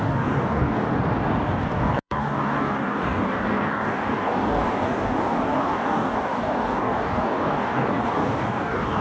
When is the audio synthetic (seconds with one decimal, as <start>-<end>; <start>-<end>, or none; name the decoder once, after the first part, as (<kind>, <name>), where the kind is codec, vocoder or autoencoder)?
0.0-0.9 (codec, DAC); 1.6-9.0